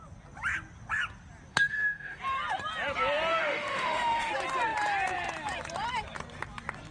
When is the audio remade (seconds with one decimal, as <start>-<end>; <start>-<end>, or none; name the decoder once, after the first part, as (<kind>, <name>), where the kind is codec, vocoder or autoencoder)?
1.5-2.2 (autoencoder, DAC-VAE); 3.3-4.3